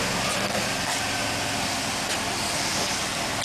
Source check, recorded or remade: recorded